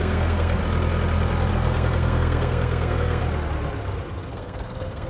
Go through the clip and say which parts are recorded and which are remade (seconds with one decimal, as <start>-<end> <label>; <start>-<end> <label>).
0.0-0.6 remade; 0.6-1.5 recorded; 1.5-3.2 remade; 3.2-4.3 recorded; 4.3-5.1 remade